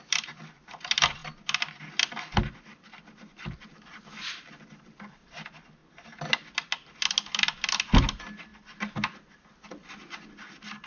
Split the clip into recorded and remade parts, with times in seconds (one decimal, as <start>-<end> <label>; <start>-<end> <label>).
0.0-10.9 recorded